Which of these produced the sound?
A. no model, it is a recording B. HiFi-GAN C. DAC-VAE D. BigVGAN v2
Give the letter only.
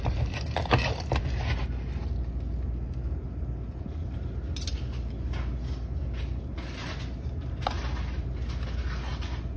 A